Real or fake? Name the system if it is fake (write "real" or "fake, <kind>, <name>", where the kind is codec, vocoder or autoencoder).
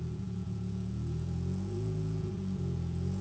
fake, vocoder, Vocos